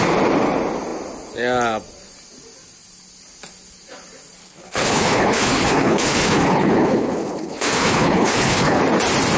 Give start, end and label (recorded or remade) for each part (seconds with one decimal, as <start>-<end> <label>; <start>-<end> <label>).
0.0-4.4 recorded; 4.4-8.8 remade; 8.8-9.4 recorded